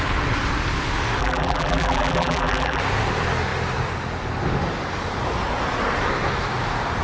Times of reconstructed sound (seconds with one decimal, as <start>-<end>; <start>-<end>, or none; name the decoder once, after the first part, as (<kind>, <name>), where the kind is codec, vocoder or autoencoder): 1.2-2.8 (vocoder, BigVGAN v2)